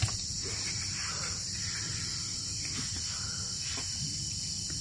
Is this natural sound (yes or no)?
yes